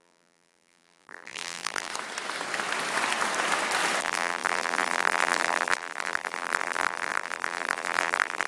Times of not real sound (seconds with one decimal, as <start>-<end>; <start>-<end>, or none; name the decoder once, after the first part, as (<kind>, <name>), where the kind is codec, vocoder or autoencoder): 0.0-1.9 (vocoder, BigVGAN v2); 4.0-8.5